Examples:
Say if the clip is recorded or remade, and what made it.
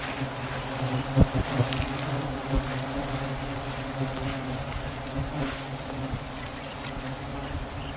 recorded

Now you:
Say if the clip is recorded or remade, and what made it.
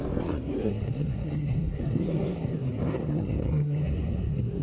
remade, codec, SNAC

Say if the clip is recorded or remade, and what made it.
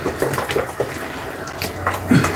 recorded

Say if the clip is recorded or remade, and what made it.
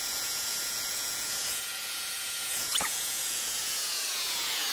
remade, vocoder, Vocos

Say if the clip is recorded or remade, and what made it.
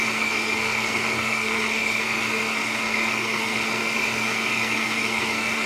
remade, codec, SNAC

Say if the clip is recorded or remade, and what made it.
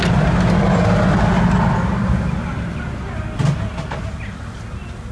recorded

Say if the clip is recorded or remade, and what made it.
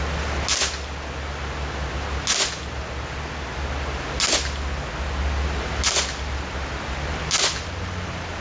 recorded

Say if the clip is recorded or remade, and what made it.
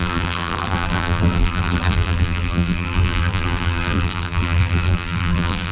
remade, vocoder, BigVGAN v2